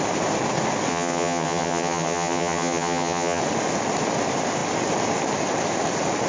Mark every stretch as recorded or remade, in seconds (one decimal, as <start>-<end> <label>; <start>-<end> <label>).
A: 0.0-0.9 recorded; 0.9-3.4 remade; 3.4-6.3 recorded